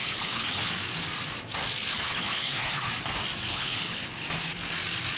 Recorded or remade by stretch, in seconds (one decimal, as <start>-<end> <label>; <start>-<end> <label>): 0.0-0.7 remade; 0.7-1.9 recorded; 1.9-2.9 remade; 2.9-3.5 recorded; 3.5-4.1 remade; 4.1-5.2 recorded